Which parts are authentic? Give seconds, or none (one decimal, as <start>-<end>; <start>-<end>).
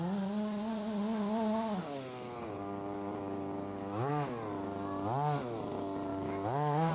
0.0-1.8; 4.1-6.1